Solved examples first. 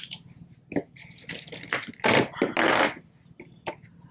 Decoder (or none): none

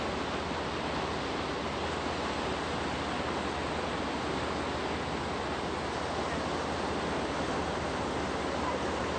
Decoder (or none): none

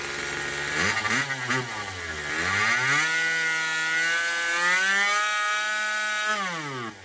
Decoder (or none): none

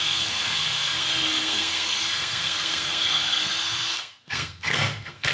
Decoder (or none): codec, SNAC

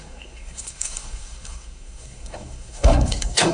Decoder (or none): codec, SNAC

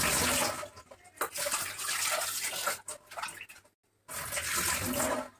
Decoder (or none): none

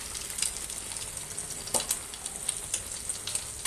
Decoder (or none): none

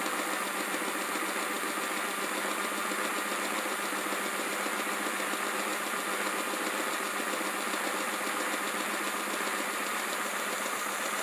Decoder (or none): none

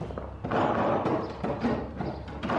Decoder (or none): none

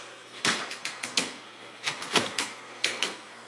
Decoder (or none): codec, SNAC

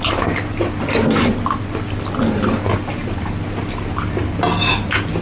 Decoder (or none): none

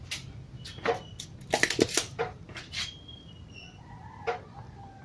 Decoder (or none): none